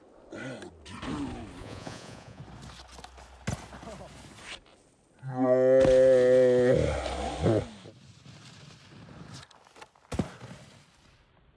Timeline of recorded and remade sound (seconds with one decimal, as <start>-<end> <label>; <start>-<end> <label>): 0.0-1.6 recorded; 1.6-2.4 remade; 2.4-11.6 recorded